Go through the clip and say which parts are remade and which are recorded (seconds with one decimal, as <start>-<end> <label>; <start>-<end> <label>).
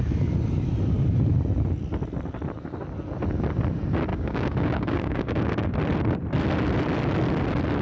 0.0-4.1 recorded; 4.1-5.7 remade; 5.7-7.8 recorded